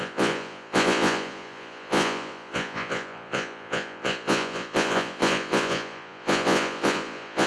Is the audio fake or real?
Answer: fake